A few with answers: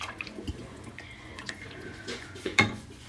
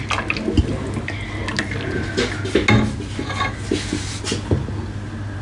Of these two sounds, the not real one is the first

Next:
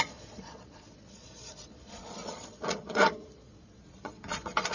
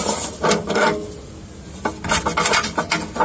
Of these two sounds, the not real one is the first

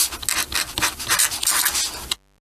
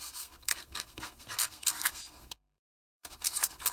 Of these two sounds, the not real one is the second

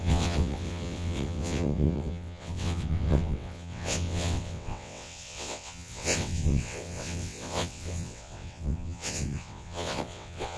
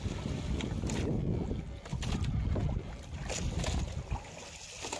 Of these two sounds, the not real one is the first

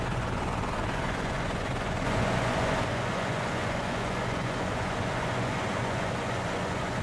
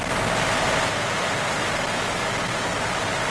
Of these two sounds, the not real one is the first